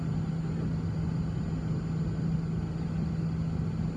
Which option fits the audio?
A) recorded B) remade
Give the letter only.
A